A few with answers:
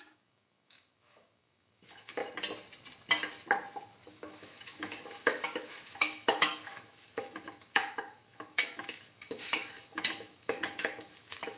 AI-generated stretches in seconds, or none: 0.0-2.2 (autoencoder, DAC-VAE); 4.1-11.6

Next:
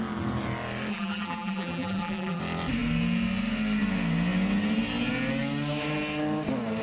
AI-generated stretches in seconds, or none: 0.9-2.4 (vocoder, BigVGAN v2)